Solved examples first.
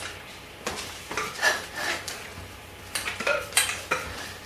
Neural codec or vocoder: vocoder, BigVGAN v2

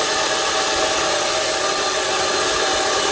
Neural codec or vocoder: none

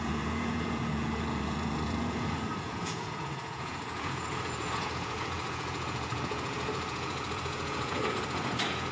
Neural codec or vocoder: vocoder, Vocos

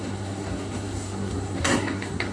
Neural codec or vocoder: codec, SNAC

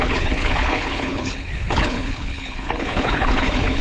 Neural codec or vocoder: codec, HILCodec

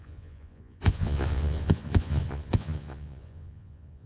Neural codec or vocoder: vocoder, Vocos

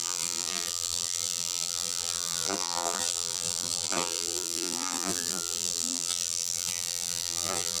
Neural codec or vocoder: vocoder, BigVGAN v2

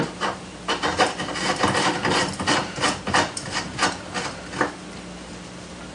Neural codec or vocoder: none